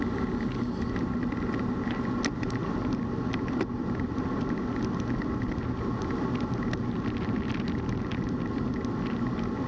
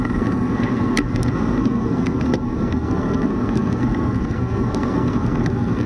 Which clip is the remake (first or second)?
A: second